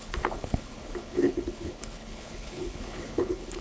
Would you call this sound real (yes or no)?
no